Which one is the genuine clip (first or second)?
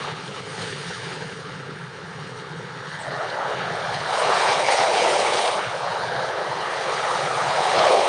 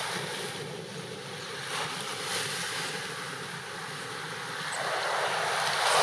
second